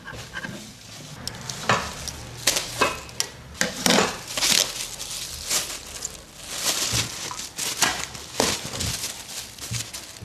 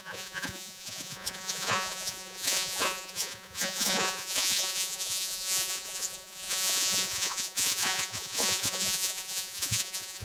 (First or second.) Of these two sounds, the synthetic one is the second